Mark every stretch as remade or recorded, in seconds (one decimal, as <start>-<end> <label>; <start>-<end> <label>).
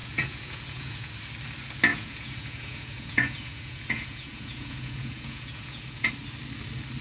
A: 0.0-1.1 remade; 1.1-1.9 recorded; 1.9-6.1 remade; 6.1-7.0 recorded